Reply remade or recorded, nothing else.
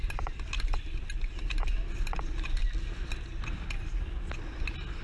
recorded